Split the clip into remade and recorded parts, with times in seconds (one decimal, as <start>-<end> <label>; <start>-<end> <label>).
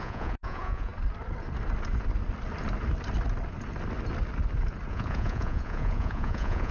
0.0-0.9 remade; 0.9-4.9 recorded; 4.9-6.7 remade